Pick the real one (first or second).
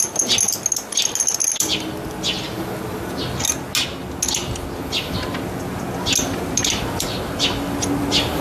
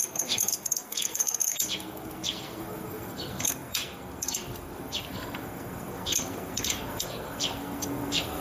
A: first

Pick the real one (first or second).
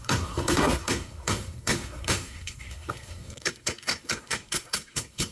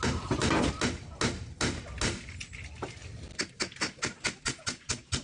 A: second